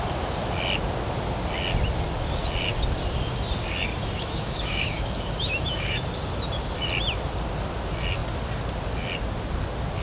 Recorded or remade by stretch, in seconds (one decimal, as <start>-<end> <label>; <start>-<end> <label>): 0.0-4.0 recorded; 4.0-6.0 remade; 6.0-10.0 recorded